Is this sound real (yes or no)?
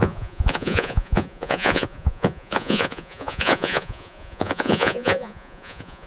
no